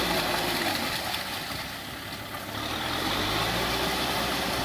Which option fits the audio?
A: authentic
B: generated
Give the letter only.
A